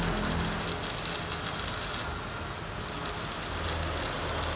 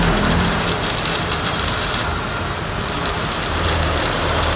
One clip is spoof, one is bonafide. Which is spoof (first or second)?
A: second